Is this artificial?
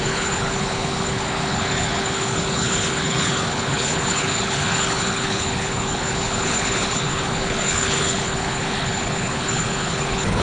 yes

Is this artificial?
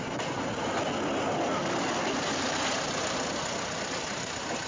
no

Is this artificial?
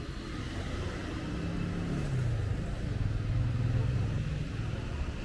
no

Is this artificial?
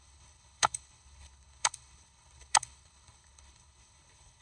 yes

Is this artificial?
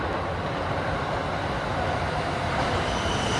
no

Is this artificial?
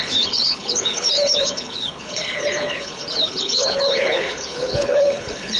yes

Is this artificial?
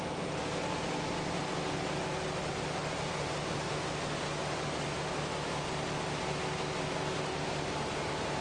no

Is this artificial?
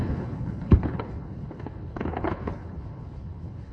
yes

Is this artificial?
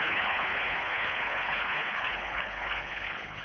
yes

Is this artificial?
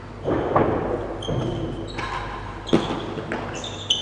no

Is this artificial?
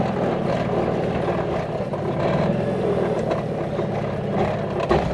no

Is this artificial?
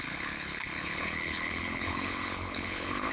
yes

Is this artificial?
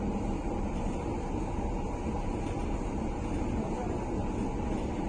no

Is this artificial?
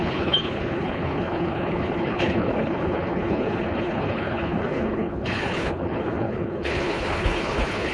yes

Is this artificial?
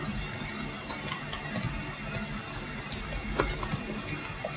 no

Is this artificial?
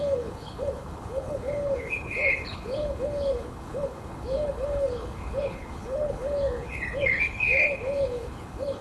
yes